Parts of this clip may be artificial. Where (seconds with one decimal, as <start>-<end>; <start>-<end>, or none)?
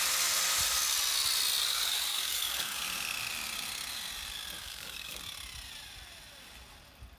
2.1-2.8; 4.6-5.2